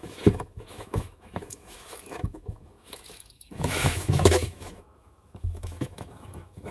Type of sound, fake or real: fake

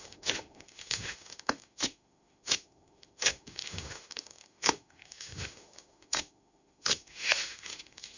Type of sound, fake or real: fake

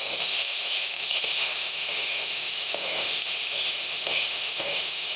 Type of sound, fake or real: fake